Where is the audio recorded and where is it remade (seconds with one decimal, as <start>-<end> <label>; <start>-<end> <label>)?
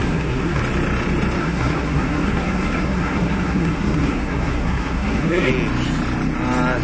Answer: 0.0-0.6 remade; 0.6-1.4 recorded; 1.4-5.5 remade; 5.5-6.8 recorded